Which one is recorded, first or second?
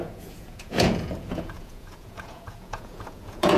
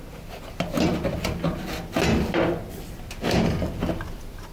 second